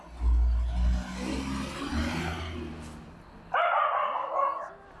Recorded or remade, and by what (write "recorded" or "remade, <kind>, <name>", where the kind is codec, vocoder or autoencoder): recorded